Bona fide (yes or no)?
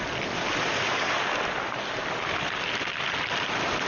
yes